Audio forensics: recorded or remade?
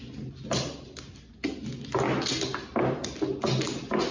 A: recorded